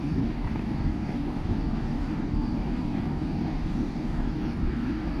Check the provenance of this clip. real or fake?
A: fake